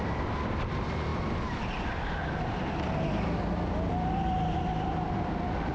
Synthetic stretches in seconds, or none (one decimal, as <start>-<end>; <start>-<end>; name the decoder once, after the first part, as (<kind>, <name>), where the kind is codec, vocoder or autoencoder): none